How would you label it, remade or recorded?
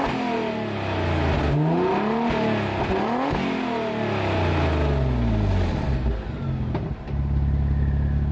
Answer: recorded